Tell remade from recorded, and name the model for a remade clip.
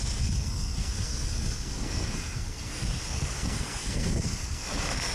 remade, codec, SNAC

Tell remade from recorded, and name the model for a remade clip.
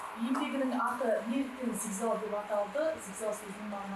recorded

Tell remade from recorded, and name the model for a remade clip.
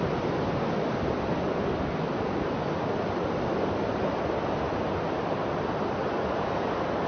recorded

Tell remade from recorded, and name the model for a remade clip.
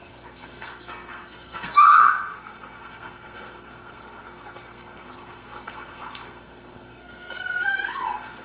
remade, codec, SNAC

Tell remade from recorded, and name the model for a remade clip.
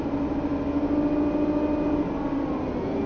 recorded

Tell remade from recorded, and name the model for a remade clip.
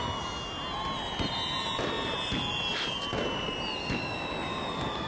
recorded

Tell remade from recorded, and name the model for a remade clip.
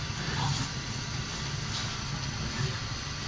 recorded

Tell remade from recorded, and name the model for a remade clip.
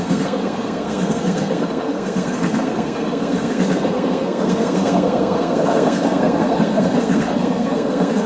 remade, codec, SNAC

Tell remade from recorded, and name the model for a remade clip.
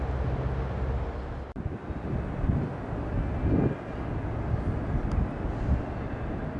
recorded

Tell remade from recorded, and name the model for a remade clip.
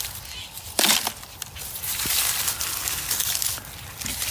recorded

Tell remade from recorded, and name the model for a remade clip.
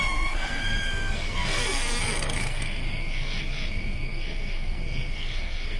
remade, codec, SNAC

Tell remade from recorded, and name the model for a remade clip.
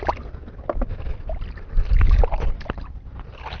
recorded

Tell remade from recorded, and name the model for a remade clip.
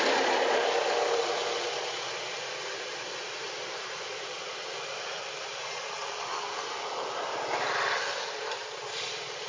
recorded